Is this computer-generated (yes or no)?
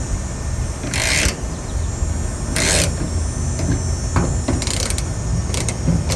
no